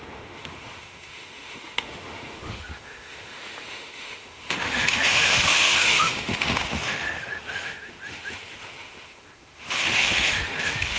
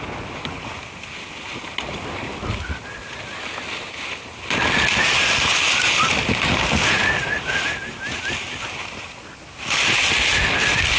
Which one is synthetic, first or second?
first